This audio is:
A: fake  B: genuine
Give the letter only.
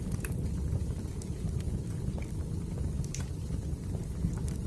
B